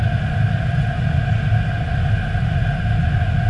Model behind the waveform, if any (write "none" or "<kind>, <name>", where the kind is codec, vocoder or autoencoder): none